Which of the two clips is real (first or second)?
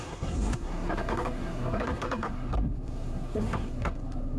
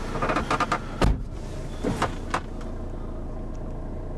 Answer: second